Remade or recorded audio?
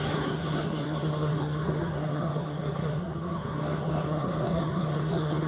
remade